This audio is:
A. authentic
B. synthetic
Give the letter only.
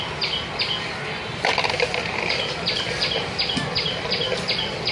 A